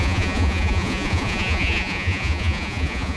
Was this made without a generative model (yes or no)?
no